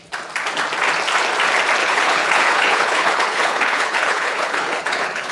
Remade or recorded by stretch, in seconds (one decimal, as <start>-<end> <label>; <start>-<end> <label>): 0.0-1.8 recorded; 1.8-5.3 remade